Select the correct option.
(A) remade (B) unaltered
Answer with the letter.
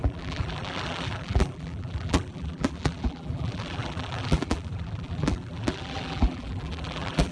A